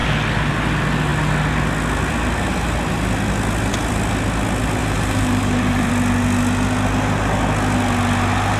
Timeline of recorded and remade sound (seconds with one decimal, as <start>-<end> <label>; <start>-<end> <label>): 0.0-4.8 recorded; 4.8-5.9 remade; 5.9-8.6 recorded